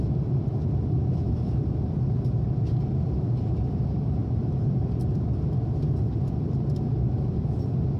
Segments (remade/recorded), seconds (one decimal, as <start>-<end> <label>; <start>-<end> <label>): 0.0-4.2 remade; 4.2-4.7 recorded; 4.7-8.0 remade